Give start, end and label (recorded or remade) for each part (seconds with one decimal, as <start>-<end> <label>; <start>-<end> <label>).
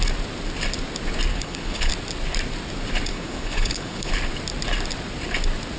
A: 0.0-1.3 recorded; 1.3-1.9 remade; 1.9-3.1 recorded; 3.1-4.1 remade; 4.1-5.8 recorded